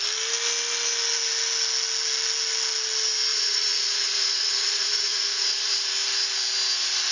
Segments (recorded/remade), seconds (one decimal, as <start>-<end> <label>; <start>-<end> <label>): 0.0-3.3 recorded; 3.3-5.7 remade; 5.7-7.1 recorded